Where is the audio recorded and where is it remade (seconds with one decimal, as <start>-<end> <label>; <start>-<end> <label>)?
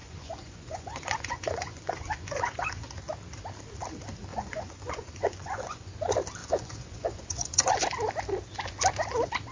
0.0-2.9 remade; 2.9-4.3 recorded; 4.3-5.9 remade; 5.9-6.4 recorded; 6.4-7.8 remade; 7.8-9.5 recorded